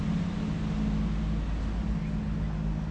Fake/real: real